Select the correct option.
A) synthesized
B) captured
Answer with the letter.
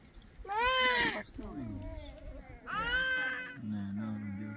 B